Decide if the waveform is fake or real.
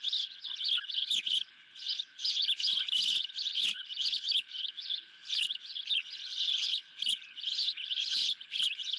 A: fake